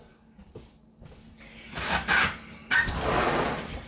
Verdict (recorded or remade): recorded